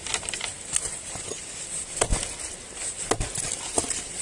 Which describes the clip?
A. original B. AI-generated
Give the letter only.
A